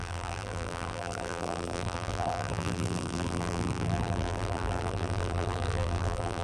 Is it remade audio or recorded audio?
remade